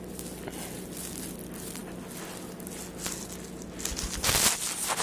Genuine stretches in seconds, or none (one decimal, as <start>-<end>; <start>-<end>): 0.0-5.0